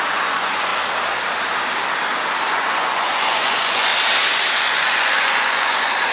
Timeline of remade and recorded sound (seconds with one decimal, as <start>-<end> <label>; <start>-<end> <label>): 0.0-0.7 remade; 0.7-2.5 recorded; 2.5-3.9 remade; 3.9-4.6 recorded; 4.6-6.1 remade